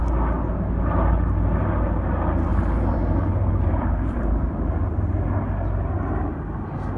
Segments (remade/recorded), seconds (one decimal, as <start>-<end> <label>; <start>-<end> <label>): 0.0-2.5 recorded; 2.5-4.6 remade; 4.6-7.0 recorded